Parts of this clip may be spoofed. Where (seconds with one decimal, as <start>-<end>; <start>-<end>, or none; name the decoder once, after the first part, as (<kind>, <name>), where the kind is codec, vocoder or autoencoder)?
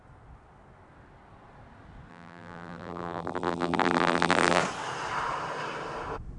2.1-4.6 (vocoder, BigVGAN v2)